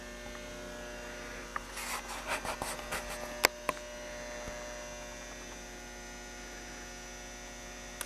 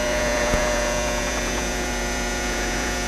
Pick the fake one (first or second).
second